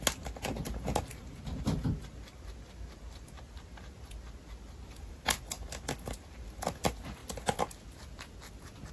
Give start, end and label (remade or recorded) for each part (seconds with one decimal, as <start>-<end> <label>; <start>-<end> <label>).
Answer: 0.0-8.9 recorded